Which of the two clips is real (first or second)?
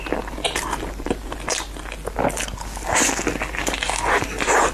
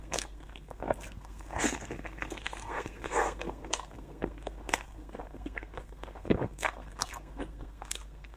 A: first